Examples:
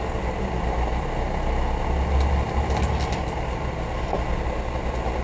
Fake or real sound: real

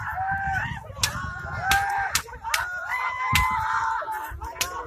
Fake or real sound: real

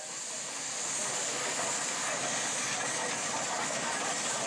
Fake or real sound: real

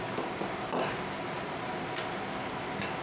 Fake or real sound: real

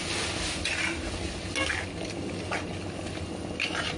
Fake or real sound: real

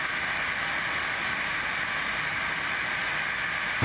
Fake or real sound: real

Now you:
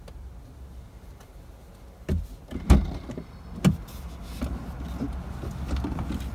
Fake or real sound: real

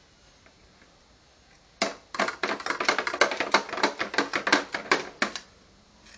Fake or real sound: real